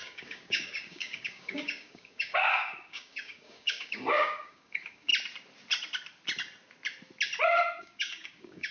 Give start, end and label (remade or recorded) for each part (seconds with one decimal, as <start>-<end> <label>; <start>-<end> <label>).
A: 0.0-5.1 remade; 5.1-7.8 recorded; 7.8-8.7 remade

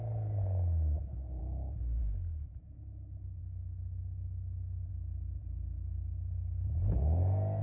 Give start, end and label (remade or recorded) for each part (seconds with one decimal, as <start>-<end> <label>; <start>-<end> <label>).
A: 0.0-7.6 recorded

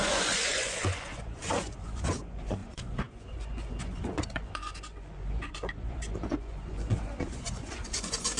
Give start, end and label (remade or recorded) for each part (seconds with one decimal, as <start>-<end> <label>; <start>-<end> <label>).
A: 0.0-8.4 remade

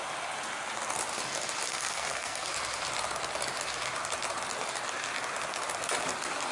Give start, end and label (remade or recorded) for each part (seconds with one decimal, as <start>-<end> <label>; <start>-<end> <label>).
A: 0.0-1.7 recorded; 1.7-2.5 remade; 2.5-6.5 recorded

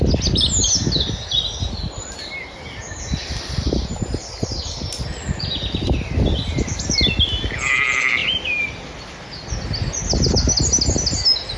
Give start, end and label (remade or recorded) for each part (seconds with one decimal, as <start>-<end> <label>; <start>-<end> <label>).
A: 0.0-11.6 recorded

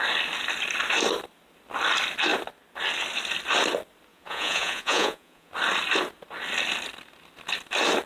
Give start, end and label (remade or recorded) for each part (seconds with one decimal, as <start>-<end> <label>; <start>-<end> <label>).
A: 0.0-4.1 recorded; 4.1-5.5 remade; 5.5-8.1 recorded

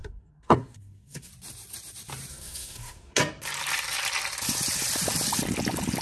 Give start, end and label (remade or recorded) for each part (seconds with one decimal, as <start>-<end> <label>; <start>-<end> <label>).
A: 0.0-1.3 remade; 1.3-2.3 recorded; 2.3-3.2 remade; 3.2-6.0 recorded

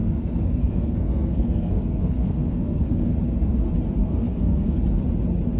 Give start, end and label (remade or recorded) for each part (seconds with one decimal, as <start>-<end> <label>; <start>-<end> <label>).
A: 0.0-3.1 remade; 3.1-4.0 recorded; 4.0-4.8 remade; 4.8-5.6 recorded